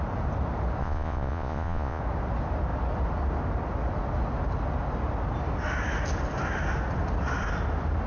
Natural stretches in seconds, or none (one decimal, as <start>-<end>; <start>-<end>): 0.0-0.8; 2.0-8.1